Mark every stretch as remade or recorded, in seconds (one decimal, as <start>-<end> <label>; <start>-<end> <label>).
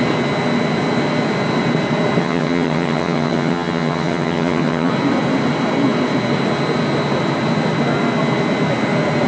0.0-2.2 recorded; 2.2-4.9 remade; 4.9-9.3 recorded